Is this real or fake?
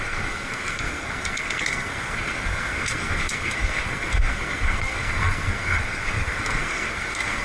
fake